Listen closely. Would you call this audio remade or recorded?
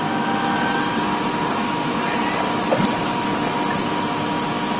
recorded